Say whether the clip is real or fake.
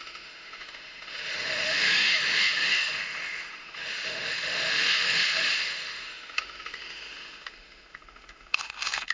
fake